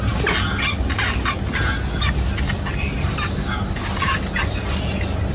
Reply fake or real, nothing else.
real